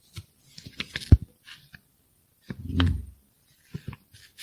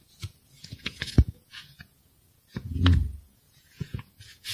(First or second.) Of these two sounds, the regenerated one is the second